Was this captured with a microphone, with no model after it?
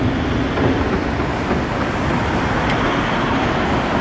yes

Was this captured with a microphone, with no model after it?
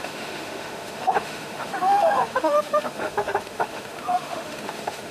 no